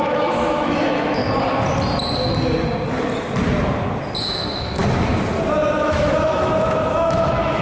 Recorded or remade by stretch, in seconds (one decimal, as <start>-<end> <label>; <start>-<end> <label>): 0.0-1.2 remade; 1.2-4.2 recorded; 4.2-4.8 remade; 4.8-5.8 recorded; 5.8-7.6 remade

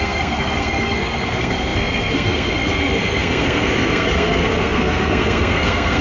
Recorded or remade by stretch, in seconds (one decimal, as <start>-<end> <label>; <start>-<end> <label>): 0.0-6.0 remade

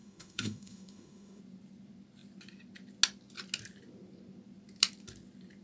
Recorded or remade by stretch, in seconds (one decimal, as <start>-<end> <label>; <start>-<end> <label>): 0.0-1.4 remade; 1.4-5.6 recorded

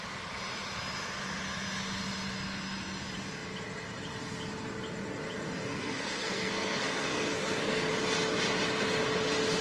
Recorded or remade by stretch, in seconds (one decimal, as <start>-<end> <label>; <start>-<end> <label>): 0.0-5.7 recorded; 5.7-7.9 remade; 7.9-9.6 recorded

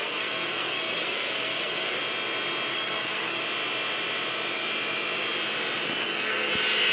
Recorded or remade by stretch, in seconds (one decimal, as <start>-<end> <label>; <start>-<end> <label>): 0.0-2.0 remade; 2.0-2.7 recorded; 2.7-3.4 remade; 3.4-6.0 recorded; 6.0-6.5 remade; 6.5-6.9 recorded